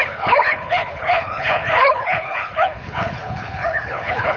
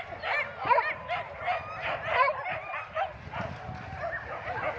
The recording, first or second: second